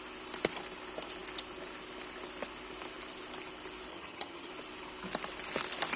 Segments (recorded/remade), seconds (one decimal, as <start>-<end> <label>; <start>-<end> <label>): 0.0-3.9 recorded; 3.9-4.5 remade; 4.5-6.0 recorded